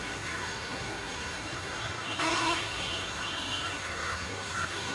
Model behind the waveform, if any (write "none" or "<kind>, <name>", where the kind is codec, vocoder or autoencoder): codec, SNAC